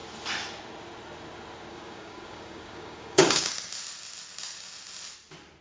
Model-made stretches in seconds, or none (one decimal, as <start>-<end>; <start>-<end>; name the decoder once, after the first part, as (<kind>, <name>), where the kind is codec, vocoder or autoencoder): 1.7-3.5 (codec, DAC)